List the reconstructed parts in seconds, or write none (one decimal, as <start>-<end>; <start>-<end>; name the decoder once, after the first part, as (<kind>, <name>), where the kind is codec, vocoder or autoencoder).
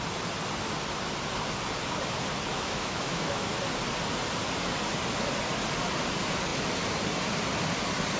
2.5-3.5 (autoencoder, DAC-VAE)